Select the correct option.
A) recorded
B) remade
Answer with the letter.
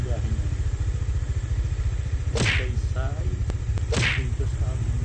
A